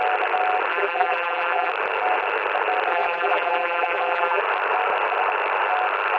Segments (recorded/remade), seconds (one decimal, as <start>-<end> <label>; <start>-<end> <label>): 0.0-0.7 recorded; 0.7-1.7 remade; 1.7-2.9 recorded; 2.9-4.4 remade; 4.4-6.2 recorded